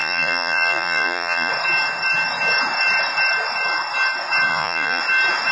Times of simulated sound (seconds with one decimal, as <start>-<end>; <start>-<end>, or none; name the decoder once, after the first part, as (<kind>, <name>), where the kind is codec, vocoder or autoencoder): 0.0-1.5 (vocoder, Vocos); 4.5-5.0

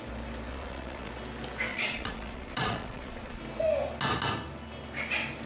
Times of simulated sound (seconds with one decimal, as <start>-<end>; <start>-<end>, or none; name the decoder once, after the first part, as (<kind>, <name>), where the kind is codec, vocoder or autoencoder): 0.5-1.1 (vocoder, Vocos); 1.7-3.4

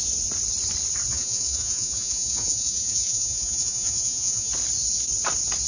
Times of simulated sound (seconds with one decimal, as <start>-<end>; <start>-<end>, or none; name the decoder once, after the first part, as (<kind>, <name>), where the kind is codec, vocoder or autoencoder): 1.1-4.5 (vocoder, Vocos)

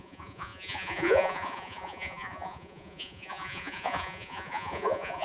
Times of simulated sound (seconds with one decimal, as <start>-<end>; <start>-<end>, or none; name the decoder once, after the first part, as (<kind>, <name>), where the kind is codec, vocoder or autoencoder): 0.0-5.2 (vocoder, Vocos)

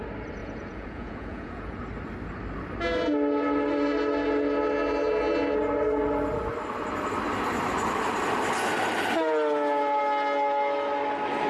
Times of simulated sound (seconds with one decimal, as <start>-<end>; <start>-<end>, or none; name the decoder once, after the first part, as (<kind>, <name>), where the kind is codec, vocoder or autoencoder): 0.4-1.8 (vocoder, Vocos)

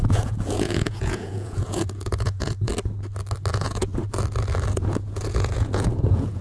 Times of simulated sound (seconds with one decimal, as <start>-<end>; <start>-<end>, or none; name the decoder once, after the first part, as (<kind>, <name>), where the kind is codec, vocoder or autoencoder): 0.0-2.7 (vocoder, Vocos); 3.5-3.9; 4.7-6.4